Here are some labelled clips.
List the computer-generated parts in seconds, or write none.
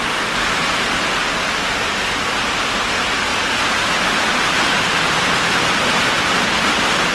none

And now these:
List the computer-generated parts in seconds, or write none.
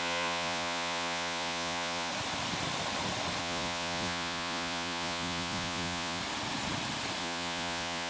0.0-2.1 (vocoder, Vocos); 3.4-6.2; 7.2-8.1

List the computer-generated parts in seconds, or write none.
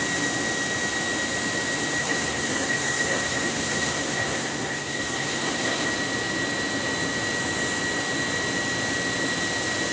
2.0-5.9 (codec, SNAC)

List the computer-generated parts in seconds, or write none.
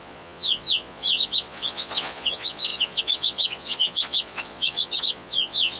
0.0-5.8 (vocoder, Vocos)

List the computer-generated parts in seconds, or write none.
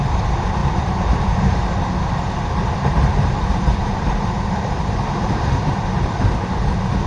0.6-1.6 (vocoder, BigVGAN v2); 3.0-5.7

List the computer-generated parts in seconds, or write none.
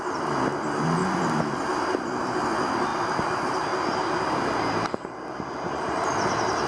4.0-6.1 (vocoder, BigVGAN v2)